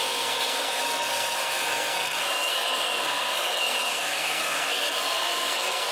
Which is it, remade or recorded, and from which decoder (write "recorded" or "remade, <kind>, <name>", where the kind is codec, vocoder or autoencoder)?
remade, codec, SNAC